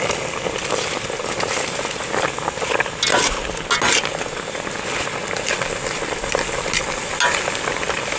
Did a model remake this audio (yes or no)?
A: no